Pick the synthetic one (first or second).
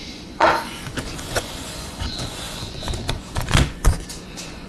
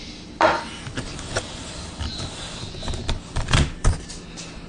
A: first